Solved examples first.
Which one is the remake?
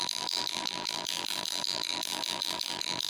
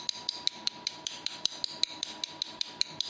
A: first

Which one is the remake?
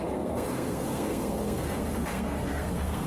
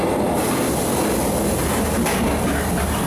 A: first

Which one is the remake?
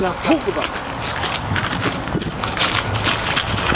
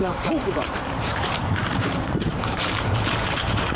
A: second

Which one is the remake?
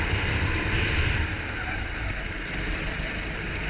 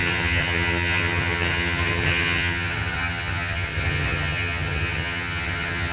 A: second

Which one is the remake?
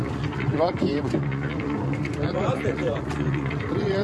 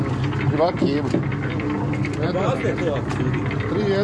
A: first